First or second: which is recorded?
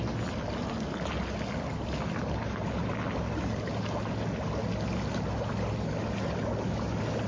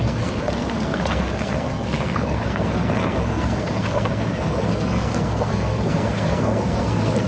first